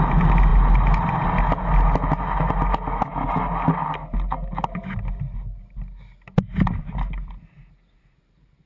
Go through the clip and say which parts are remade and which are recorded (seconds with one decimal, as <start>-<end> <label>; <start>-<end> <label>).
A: 0.0-8.7 recorded